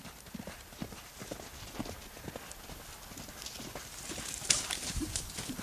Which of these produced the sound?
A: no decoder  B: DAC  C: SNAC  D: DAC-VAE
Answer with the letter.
A